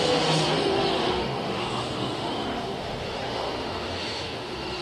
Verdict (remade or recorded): remade